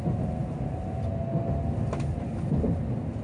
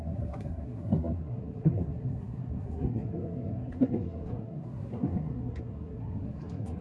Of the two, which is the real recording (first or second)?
first